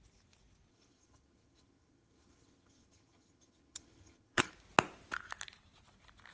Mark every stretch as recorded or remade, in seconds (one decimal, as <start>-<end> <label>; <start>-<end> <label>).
0.0-0.7 recorded; 0.7-4.5 remade; 4.5-6.3 recorded